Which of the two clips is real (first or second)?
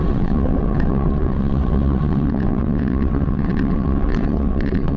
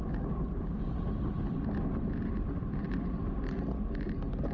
second